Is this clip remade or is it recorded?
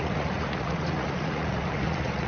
remade